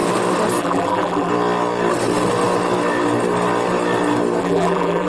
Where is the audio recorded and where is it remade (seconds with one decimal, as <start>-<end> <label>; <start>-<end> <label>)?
0.0-0.6 recorded; 0.6-1.3 remade; 1.3-4.4 recorded; 4.4-5.1 remade